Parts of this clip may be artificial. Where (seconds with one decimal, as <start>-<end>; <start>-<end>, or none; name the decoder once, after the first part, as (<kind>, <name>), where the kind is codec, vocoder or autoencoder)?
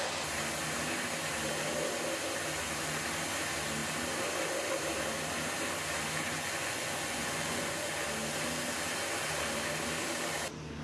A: 6.2-7.9 (vocoder, Vocos)